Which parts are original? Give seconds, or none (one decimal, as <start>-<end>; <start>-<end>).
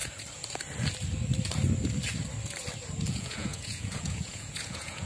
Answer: 0.0-3.1